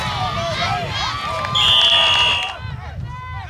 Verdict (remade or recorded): recorded